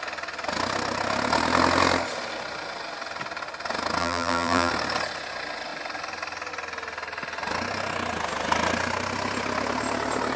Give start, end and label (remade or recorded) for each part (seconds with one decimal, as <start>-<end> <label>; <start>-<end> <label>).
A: 0.0-4.0 recorded; 4.0-4.7 remade; 4.7-10.4 recorded